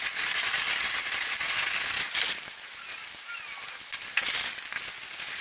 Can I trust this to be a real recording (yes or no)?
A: yes